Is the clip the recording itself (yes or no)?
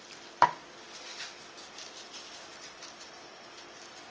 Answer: yes